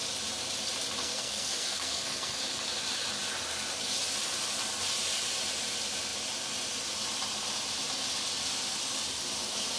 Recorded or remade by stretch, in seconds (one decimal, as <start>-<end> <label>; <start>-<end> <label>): 0.0-1.0 recorded; 1.0-2.4 remade; 2.4-9.8 recorded